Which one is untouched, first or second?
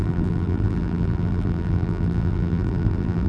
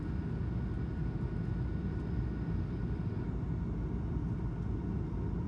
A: second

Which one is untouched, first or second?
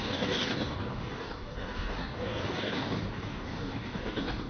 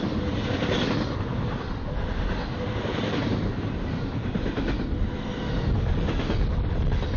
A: second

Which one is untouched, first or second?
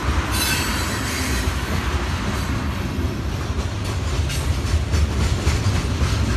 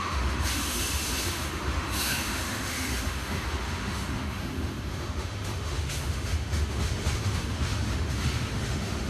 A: first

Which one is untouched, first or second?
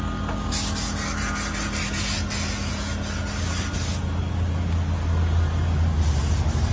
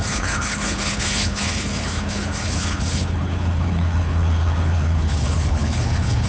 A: first